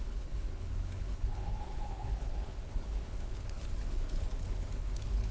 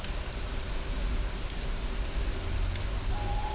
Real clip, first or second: second